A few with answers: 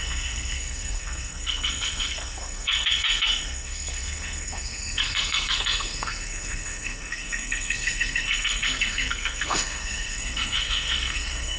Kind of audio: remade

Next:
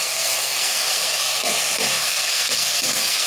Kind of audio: remade